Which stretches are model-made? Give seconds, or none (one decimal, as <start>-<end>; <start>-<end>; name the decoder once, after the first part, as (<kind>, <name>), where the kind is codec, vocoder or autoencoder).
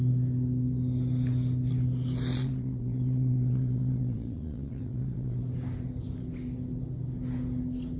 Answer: 2.3-5.4 (vocoder, Vocos)